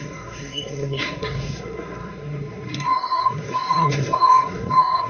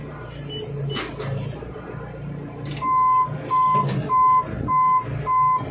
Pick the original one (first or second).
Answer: second